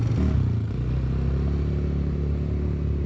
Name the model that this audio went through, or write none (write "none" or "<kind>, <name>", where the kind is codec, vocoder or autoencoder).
none